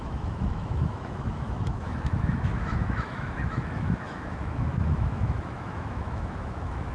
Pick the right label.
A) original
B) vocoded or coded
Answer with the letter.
B